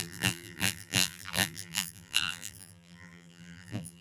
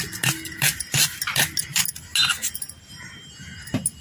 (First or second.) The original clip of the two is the second